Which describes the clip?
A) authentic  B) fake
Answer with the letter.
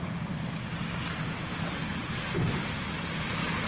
A